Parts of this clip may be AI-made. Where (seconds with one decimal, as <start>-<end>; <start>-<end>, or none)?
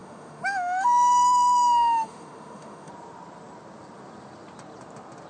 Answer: 0.0-2.9